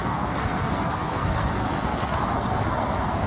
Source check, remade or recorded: remade